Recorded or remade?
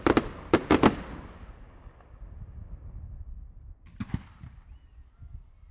recorded